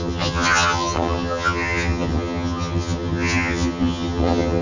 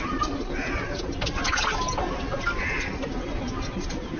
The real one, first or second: second